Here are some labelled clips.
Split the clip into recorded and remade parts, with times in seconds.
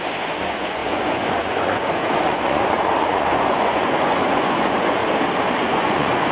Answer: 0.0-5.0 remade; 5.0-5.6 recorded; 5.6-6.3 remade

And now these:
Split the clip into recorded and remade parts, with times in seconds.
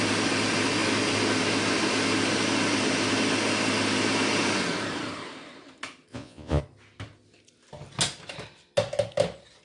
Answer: 0.0-6.1 recorded; 6.1-6.6 remade; 6.6-9.6 recorded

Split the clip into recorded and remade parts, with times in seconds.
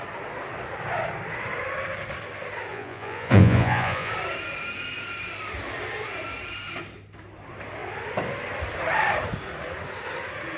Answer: 0.0-2.7 recorded; 2.7-4.1 remade; 4.1-10.6 recorded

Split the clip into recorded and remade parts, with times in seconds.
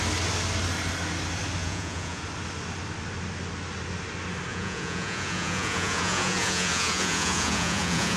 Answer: 0.0-1.6 recorded; 1.6-2.2 remade; 2.2-4.5 recorded; 4.5-8.2 remade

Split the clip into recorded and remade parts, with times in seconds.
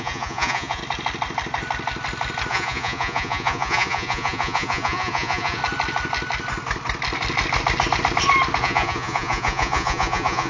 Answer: 0.0-0.8 remade; 0.8-2.5 recorded; 2.5-5.6 remade; 5.6-8.6 recorded; 8.6-10.5 remade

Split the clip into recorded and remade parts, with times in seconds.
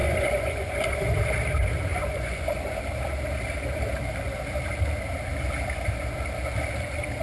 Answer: 0.0-1.2 remade; 1.2-1.9 recorded; 1.9-2.8 remade; 2.8-7.2 recorded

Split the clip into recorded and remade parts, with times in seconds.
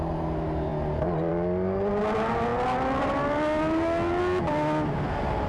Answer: 0.0-5.5 recorded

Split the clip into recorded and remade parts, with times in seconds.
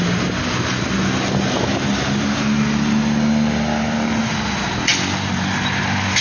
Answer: 0.0-6.2 recorded